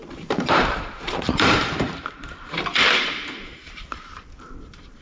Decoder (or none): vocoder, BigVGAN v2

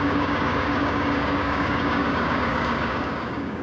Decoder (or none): codec, DAC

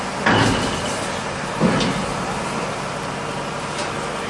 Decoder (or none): none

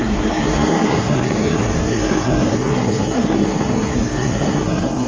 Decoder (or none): codec, SNAC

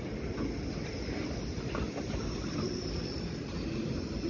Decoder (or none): none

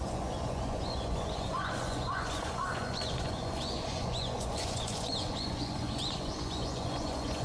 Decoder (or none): vocoder, Vocos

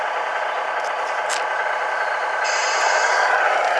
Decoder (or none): none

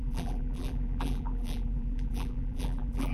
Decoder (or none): vocoder, BigVGAN v2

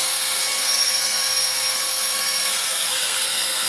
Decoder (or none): codec, SNAC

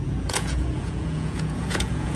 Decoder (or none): vocoder, Vocos